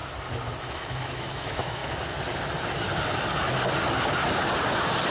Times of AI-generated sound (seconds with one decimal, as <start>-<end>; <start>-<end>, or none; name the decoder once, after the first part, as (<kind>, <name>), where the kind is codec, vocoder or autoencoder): 0.6-1.8 (autoencoder, DAC-VAE)